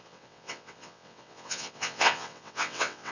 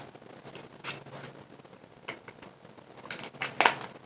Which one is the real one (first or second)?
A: second